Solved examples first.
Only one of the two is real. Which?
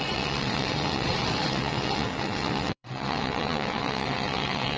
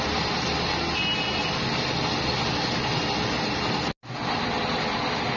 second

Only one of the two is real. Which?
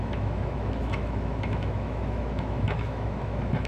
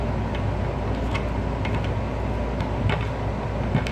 second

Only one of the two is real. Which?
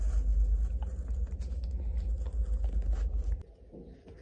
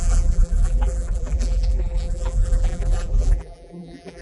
first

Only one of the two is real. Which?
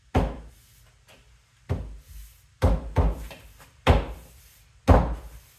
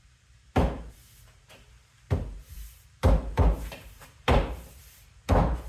first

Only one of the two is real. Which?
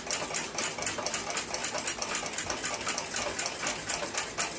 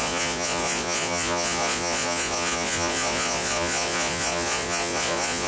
first